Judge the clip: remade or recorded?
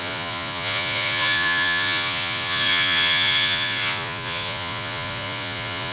remade